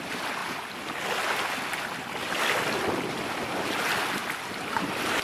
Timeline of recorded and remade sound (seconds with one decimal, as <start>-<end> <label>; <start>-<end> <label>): 0.0-5.2 recorded